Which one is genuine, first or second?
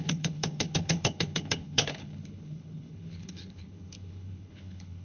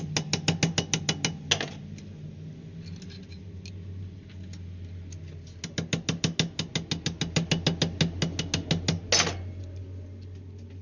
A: second